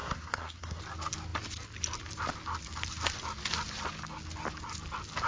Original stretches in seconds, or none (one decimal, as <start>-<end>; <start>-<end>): 0.8-5.3

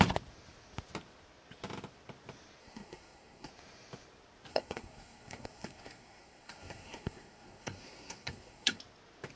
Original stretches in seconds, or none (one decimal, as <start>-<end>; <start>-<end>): 0.0-2.6; 3.5-4.5; 8.8-9.4